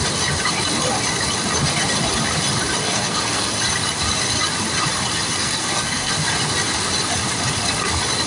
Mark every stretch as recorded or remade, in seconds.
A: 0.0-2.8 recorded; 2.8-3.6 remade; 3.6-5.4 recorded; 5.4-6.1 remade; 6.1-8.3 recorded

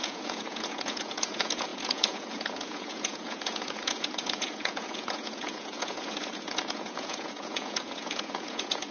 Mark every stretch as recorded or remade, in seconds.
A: 0.0-8.9 remade

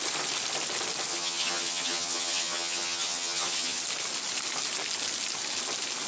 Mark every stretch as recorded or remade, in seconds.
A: 0.0-1.1 recorded; 1.1-3.8 remade; 3.8-6.1 recorded

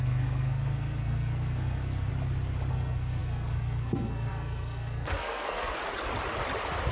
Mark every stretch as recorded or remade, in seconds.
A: 0.0-2.1 remade; 2.1-2.7 recorded; 2.7-5.8 remade; 5.8-6.9 recorded